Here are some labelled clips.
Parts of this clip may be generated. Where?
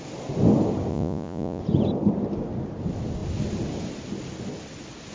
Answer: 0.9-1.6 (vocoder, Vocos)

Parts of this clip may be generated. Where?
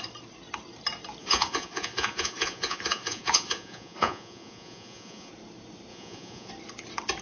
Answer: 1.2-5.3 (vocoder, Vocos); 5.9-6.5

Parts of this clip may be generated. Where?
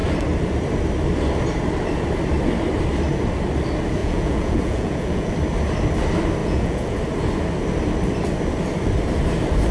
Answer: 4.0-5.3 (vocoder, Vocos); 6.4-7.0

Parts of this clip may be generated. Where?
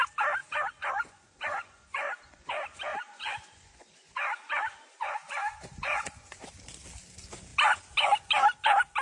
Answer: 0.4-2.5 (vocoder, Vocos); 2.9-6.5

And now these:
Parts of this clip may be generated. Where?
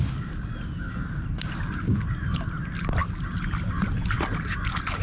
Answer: none